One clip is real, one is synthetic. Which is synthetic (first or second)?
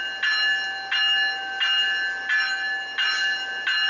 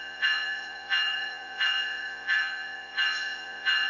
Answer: second